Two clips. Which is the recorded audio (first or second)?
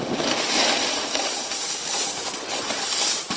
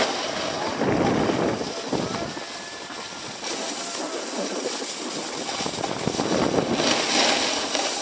second